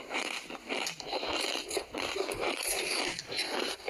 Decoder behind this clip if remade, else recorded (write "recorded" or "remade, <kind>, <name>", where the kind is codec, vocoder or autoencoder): remade, vocoder, BigVGAN v2